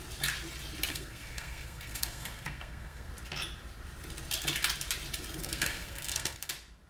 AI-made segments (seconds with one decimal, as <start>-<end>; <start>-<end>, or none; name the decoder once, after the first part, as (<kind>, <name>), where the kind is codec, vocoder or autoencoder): 0.9-3.1 (codec, SNAC); 5.4-6.5